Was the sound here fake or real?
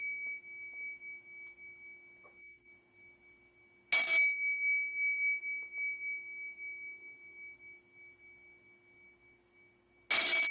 real